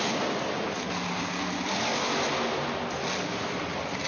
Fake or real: real